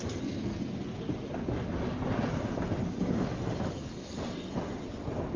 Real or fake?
real